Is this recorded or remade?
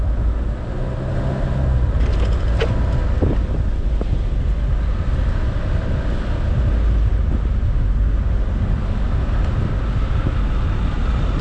recorded